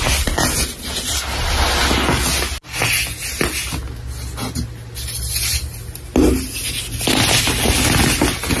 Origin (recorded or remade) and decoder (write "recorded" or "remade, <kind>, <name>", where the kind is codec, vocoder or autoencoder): recorded